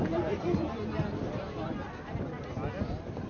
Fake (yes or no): no